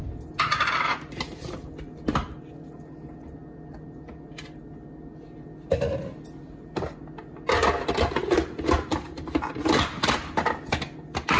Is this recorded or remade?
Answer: recorded